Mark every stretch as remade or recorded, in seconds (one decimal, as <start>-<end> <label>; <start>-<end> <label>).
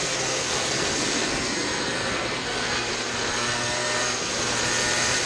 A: 0.0-2.9 remade; 2.9-3.3 recorded; 3.3-4.3 remade; 4.3-5.3 recorded